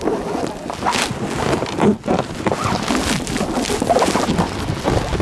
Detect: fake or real real